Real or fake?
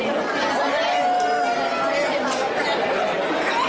real